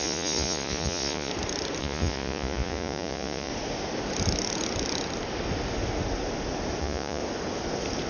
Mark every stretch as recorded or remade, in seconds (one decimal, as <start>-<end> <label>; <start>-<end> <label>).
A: 0.0-1.3 remade; 1.3-1.8 recorded; 1.8-3.5 remade; 3.5-6.8 recorded; 6.8-7.2 remade; 7.2-8.1 recorded